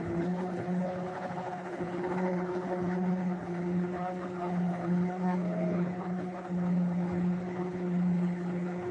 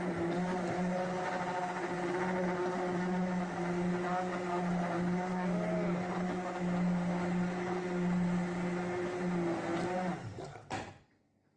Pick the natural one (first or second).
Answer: second